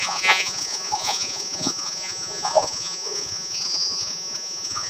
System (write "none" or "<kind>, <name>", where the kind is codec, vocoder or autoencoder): vocoder, Vocos